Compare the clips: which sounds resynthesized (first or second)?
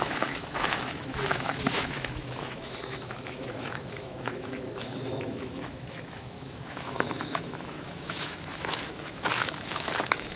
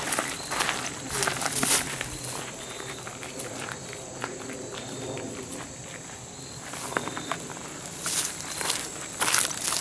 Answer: first